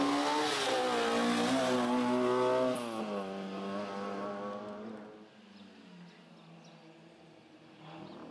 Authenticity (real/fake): real